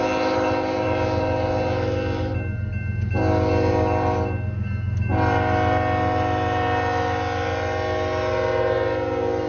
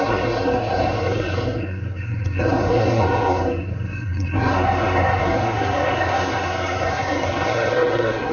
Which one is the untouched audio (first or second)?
first